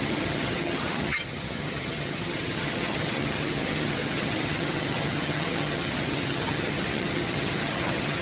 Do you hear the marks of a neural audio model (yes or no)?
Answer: yes